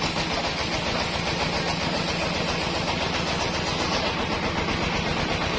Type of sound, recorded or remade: recorded